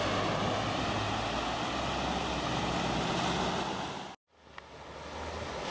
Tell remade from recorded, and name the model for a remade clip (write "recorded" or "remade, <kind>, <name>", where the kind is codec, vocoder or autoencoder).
recorded